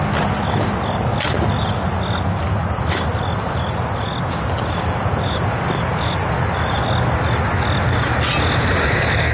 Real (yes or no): yes